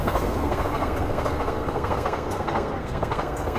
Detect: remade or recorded remade